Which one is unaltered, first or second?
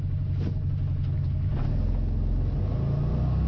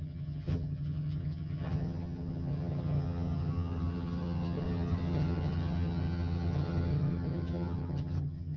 first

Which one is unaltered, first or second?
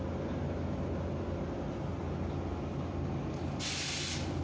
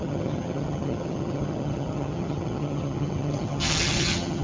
first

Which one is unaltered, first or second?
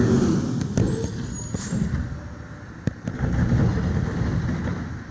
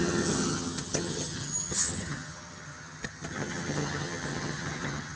first